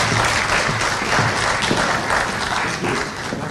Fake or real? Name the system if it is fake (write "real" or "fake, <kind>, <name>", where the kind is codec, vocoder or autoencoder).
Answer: real